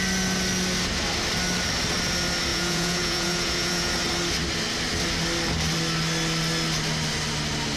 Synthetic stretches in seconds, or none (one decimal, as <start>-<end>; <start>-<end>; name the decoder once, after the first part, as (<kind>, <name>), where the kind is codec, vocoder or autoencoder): 2.5-3.9 (vocoder, Vocos)